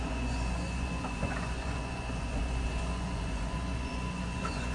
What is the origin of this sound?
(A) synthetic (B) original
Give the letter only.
A